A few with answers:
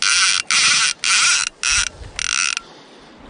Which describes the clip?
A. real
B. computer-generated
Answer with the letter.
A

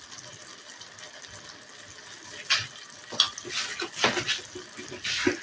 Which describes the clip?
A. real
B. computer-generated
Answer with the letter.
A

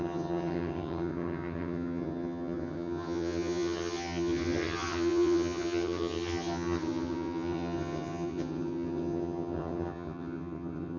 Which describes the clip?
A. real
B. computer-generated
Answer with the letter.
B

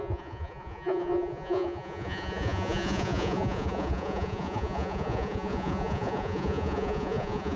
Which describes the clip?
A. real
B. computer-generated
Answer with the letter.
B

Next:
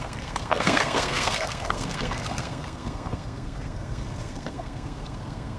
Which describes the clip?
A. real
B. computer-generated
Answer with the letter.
B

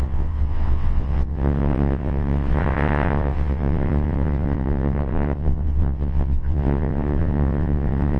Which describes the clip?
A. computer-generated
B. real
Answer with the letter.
A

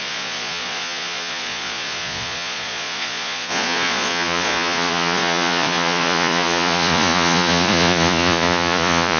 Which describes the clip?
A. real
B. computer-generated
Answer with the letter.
B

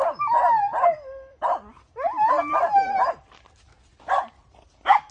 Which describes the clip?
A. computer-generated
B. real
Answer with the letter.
B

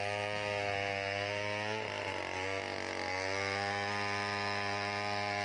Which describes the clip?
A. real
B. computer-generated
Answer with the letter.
A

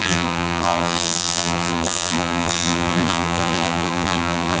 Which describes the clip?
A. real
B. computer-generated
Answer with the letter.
B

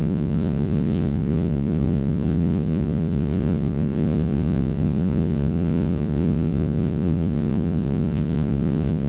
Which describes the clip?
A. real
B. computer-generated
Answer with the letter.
B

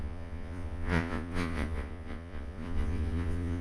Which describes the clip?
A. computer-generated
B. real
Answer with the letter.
A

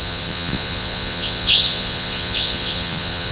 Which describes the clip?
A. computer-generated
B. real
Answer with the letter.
A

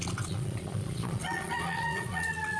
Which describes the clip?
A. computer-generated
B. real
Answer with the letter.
A